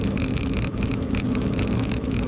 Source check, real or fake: fake